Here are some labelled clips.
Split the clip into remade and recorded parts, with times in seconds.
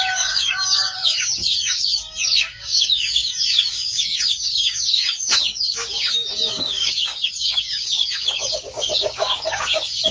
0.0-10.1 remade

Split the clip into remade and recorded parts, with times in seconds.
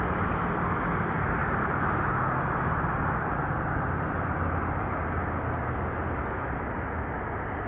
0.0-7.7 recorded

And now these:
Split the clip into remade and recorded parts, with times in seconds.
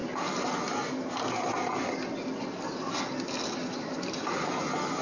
0.0-5.0 recorded